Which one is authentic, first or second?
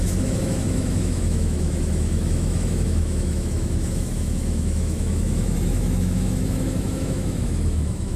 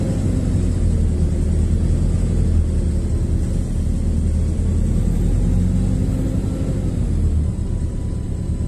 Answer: second